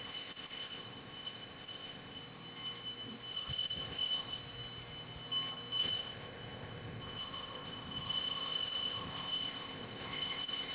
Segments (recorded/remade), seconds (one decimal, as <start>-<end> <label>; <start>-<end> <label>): 0.0-2.2 remade; 2.2-3.3 recorded; 3.3-4.4 remade; 4.4-5.8 recorded; 5.8-10.7 remade